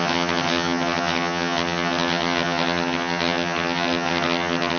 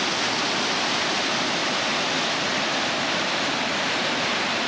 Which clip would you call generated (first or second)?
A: first